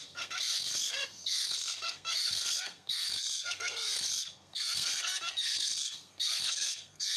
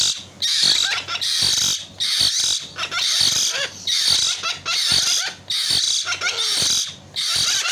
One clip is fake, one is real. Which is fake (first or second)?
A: first